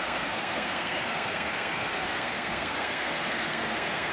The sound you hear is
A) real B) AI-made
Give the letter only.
B